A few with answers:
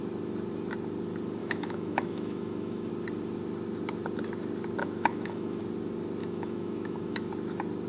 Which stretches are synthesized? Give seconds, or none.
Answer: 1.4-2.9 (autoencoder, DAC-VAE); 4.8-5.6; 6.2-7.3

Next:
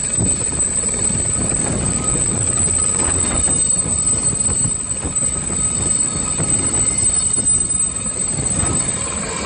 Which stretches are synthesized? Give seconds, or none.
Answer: 2.1-3.4 (vocoder, WaveNeXt)